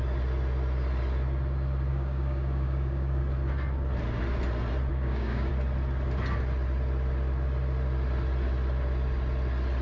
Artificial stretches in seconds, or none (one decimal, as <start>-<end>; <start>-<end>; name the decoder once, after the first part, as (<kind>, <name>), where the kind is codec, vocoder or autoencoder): 1.9-3.2 (codec, DAC); 4.9-5.5